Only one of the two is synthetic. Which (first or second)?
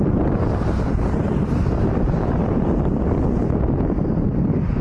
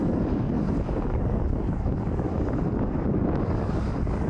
second